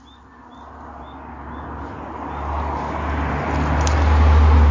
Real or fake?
real